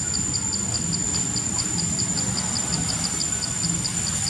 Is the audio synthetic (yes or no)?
no